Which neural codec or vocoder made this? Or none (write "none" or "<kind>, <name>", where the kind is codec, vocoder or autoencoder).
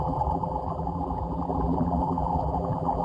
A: vocoder, BigVGAN v2